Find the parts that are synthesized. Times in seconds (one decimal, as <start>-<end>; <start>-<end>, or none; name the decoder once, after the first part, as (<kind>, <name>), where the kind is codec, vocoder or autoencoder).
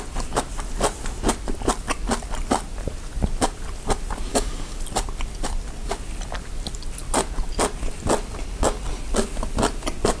4.3-4.8 (codec, DAC)